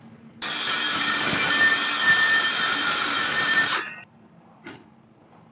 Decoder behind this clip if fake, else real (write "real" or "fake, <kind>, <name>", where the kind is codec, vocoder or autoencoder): fake, vocoder, BigVGAN v2